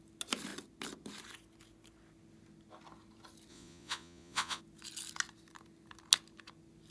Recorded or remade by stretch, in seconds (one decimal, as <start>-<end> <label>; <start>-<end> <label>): 0.0-3.5 recorded; 3.5-4.6 remade; 4.6-6.9 recorded